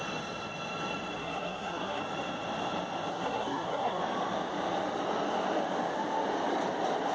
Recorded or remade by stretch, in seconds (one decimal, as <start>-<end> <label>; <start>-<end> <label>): 0.0-1.2 recorded; 1.2-2.0 remade; 2.0-3.1 recorded; 3.1-4.0 remade; 4.0-7.1 recorded